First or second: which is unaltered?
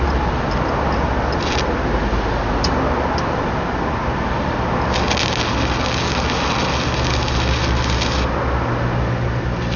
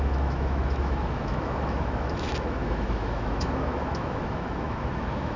first